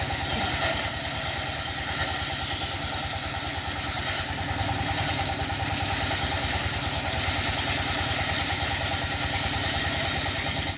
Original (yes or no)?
yes